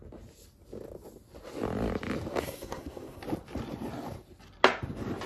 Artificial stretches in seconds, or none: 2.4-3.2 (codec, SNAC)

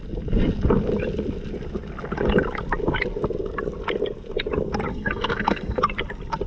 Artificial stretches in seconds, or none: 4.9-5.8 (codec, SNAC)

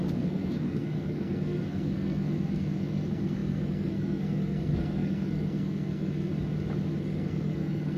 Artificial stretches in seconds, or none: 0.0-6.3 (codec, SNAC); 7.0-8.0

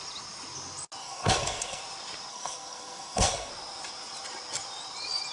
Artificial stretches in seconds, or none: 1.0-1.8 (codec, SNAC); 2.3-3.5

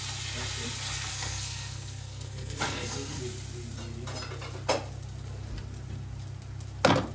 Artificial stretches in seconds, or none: 1.1-3.2 (codec, SNAC)